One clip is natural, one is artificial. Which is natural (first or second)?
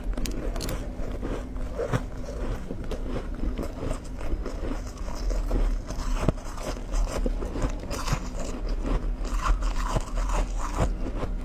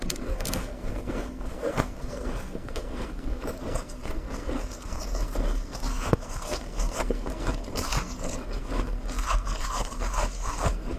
first